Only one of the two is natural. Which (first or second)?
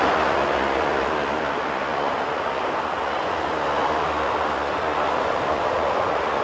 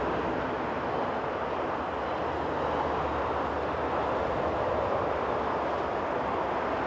second